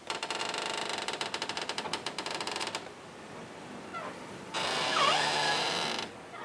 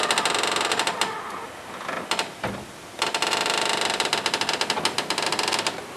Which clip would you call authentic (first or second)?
second